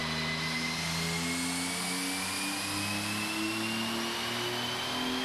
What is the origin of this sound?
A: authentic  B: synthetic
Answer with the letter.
A